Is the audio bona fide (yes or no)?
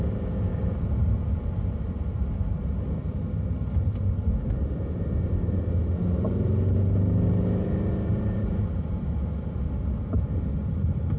yes